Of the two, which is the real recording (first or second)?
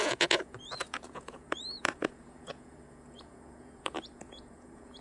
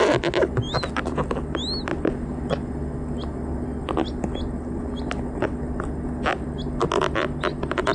second